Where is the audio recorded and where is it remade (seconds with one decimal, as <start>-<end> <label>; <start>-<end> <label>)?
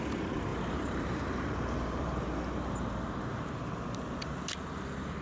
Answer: 0.0-0.5 recorded; 0.5-3.6 remade; 3.6-5.2 recorded